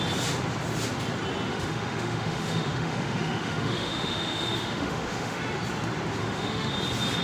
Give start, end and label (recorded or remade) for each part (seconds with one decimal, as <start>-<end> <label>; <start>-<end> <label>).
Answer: 0.0-1.5 recorded; 1.5-5.4 remade; 5.4-6.2 recorded; 6.2-6.7 remade; 6.7-7.2 recorded